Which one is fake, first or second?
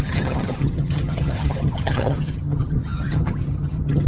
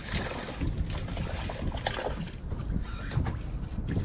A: first